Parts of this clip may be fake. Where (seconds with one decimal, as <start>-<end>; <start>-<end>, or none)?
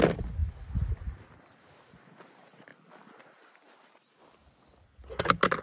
none